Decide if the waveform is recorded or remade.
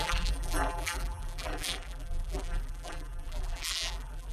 remade